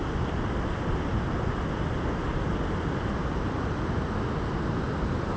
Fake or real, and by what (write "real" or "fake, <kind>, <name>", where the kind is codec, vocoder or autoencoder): real